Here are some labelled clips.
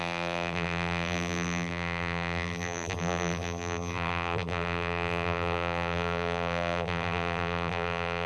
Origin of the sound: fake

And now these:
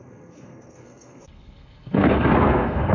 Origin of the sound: fake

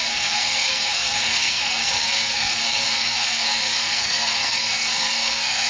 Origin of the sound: fake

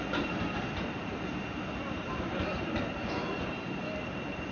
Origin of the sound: real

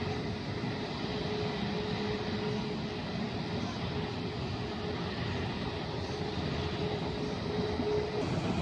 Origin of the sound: real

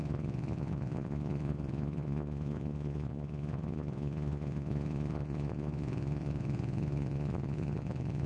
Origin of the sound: fake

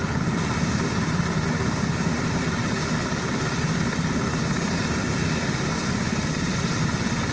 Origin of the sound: fake